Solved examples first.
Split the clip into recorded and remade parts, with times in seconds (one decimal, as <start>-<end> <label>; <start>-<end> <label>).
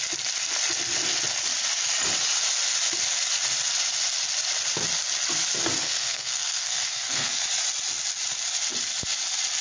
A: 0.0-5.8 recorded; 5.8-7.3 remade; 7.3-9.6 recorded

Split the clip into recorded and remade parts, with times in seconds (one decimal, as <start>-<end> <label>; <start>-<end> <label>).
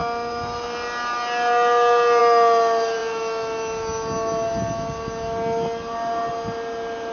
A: 0.0-7.1 recorded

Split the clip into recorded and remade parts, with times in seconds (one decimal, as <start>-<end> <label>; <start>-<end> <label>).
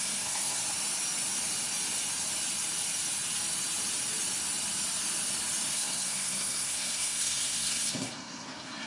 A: 0.0-0.6 remade; 0.6-5.7 recorded; 5.7-8.9 remade